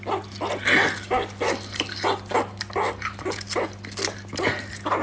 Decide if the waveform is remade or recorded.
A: recorded